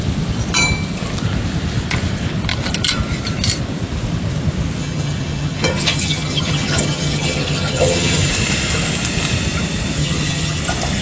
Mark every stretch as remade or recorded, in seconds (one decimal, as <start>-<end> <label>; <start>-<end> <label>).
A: 0.0-4.8 recorded; 4.8-8.3 remade; 8.3-10.0 recorded; 10.0-10.6 remade; 10.6-11.0 recorded

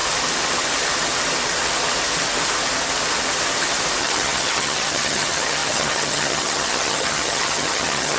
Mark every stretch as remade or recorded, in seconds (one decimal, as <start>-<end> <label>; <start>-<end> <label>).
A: 0.0-4.0 recorded; 4.0-8.2 remade

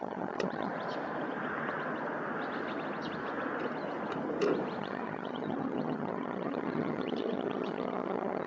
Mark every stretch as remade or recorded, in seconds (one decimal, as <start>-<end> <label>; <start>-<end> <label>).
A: 0.0-0.7 remade; 0.7-4.8 recorded; 4.8-8.5 remade

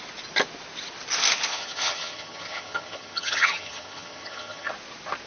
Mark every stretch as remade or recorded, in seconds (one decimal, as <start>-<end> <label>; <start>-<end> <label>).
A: 0.0-1.5 recorded; 1.5-4.7 remade; 4.7-5.3 recorded

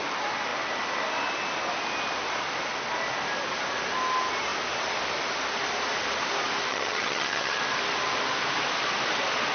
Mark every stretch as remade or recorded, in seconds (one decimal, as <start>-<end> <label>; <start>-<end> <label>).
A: 0.0-6.7 recorded; 6.7-7.6 remade; 7.6-9.5 recorded

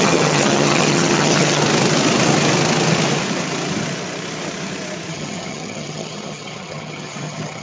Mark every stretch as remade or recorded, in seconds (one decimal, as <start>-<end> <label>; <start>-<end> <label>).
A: 0.0-1.6 remade; 1.6-5.1 recorded; 5.1-7.6 remade

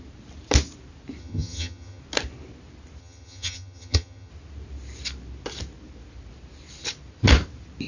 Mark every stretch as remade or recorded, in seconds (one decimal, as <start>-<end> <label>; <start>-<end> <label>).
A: 0.0-1.2 recorded; 1.2-2.0 remade; 2.0-3.0 recorded; 3.0-4.3 remade; 4.3-7.9 recorded